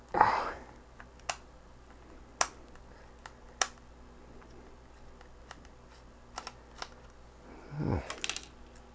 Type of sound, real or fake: real